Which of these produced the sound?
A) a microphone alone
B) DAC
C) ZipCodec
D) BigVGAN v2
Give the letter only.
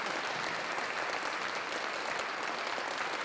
A